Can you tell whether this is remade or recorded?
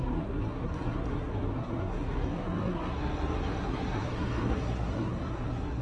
remade